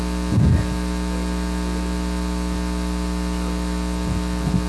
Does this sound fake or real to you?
real